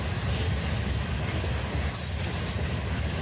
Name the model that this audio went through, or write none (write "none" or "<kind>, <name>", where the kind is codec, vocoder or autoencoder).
none